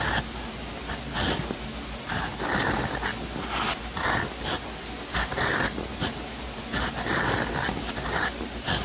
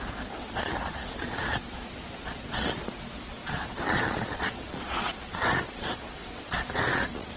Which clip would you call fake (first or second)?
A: second